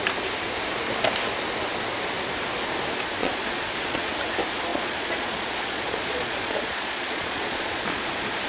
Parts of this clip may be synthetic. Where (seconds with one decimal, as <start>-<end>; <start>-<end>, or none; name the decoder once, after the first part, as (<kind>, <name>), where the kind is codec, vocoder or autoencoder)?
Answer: 3.2-4.1 (vocoder, Vocos); 4.7-8.1